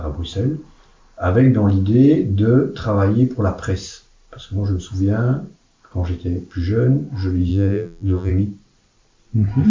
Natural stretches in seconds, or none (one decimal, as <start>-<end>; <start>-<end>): 0.0-7.5; 8.3-9.7